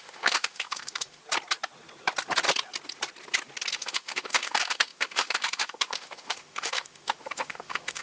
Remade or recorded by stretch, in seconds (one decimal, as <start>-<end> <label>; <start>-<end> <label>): 0.0-1.2 remade; 1.2-3.7 recorded; 3.7-8.0 remade